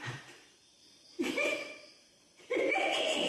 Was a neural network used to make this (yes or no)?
yes